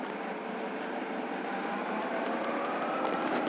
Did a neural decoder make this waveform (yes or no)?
no